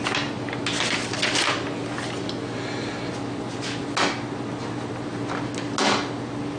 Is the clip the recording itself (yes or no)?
yes